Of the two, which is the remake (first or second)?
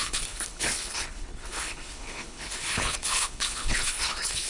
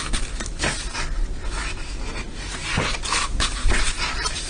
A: first